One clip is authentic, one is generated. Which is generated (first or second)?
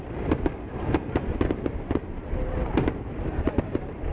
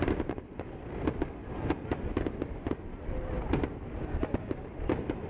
first